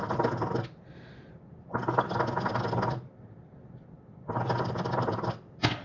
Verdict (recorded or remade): recorded